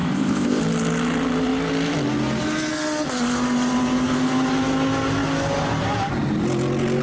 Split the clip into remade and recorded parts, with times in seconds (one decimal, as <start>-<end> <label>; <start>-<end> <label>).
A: 0.0-0.6 remade; 0.6-7.0 recorded